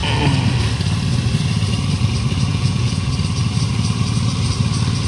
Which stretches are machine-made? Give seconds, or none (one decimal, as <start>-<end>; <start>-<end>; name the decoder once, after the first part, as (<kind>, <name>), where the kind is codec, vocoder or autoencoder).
2.5-3.1 (vocoder, Vocos)